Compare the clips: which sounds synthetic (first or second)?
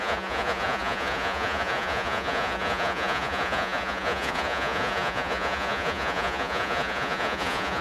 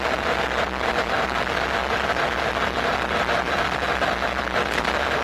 first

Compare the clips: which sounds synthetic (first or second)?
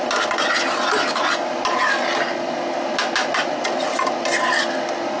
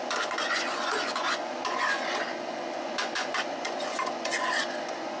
second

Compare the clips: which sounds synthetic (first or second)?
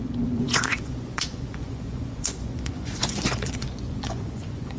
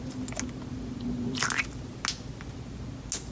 first